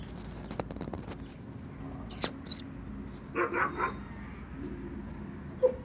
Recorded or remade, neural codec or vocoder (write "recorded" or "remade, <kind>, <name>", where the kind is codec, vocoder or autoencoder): recorded